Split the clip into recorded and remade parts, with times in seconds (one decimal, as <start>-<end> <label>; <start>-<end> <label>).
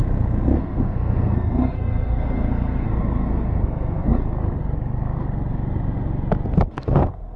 0.0-0.6 recorded; 0.6-4.2 remade; 4.2-6.7 recorded; 6.7-7.4 remade